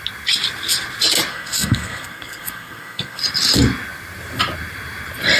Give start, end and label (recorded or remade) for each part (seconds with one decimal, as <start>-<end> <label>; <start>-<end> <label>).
0.0-1.3 recorded; 1.3-3.2 remade; 3.2-5.4 recorded